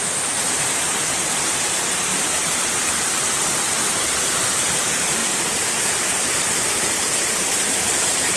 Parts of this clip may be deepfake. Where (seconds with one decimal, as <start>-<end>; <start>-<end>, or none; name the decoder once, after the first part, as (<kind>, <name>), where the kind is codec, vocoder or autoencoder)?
0.0-5.2 (vocoder, BigVGAN v2); 7.3-8.4